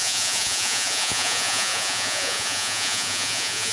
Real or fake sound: fake